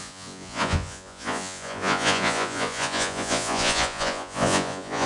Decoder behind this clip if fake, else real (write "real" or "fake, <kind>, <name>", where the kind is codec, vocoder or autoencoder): fake, vocoder, Vocos